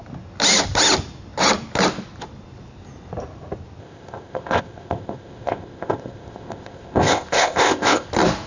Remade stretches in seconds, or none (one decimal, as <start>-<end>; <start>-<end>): 3.8-8.1